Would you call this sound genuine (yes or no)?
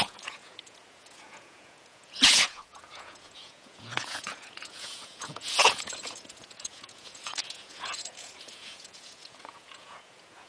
no